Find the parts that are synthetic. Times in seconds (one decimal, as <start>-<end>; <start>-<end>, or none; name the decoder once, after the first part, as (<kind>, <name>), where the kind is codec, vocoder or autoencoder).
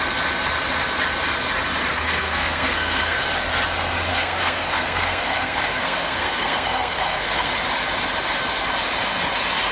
1.9-3.2 (codec, SNAC); 4.1-7.5